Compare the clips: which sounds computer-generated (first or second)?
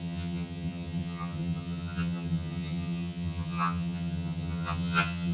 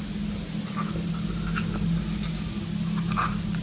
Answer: first